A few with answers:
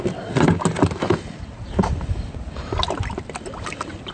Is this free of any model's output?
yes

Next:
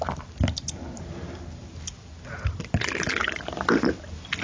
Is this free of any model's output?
yes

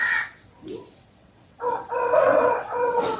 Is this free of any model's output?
no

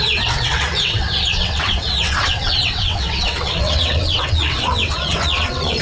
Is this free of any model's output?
no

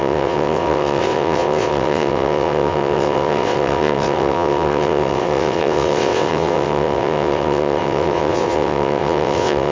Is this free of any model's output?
no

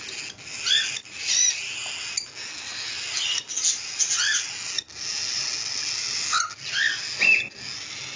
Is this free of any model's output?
yes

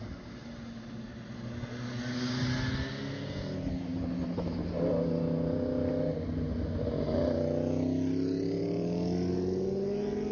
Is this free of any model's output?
yes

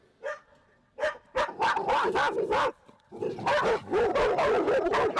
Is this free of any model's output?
yes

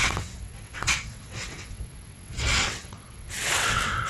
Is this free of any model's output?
no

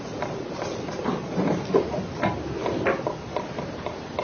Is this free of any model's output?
yes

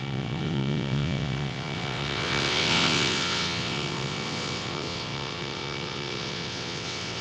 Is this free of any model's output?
no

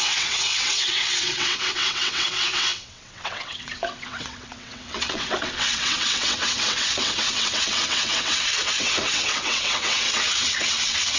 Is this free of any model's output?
no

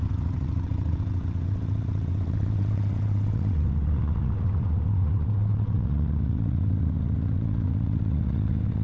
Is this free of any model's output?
no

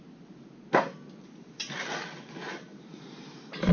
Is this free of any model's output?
yes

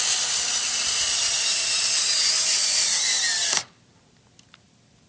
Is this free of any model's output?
yes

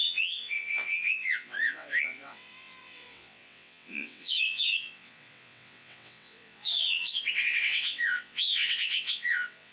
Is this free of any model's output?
no